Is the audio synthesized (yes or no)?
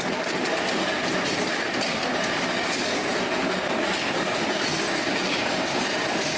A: no